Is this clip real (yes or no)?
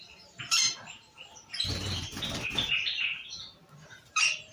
no